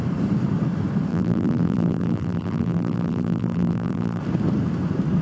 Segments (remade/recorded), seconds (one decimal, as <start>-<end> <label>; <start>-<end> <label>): 0.0-1.1 recorded; 1.1-4.2 remade; 4.2-5.2 recorded